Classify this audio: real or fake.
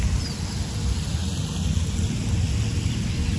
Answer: real